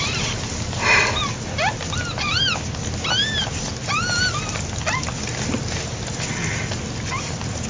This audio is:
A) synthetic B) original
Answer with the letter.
B